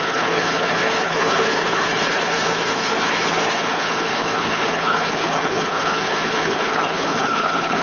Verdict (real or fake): fake